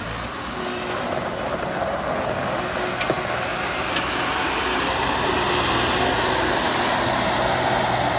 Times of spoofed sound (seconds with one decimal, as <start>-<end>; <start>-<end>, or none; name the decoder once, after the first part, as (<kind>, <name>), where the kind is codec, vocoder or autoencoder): none